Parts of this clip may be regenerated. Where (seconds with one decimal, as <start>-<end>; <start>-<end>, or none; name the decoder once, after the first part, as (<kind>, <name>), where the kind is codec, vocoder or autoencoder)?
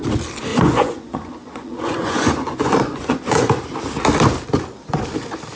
0.5-3.5 (vocoder, Vocos)